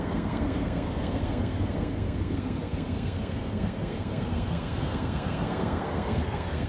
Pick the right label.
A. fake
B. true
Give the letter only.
A